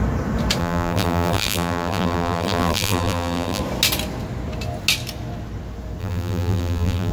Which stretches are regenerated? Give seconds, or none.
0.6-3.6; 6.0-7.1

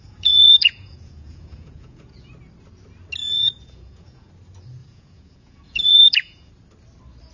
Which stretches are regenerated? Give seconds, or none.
0.0-2.3; 3.2-4.3; 4.8-6.5

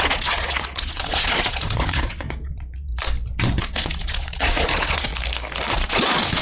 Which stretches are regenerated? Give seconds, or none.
0.0-2.9; 3.6-5.1; 5.7-6.4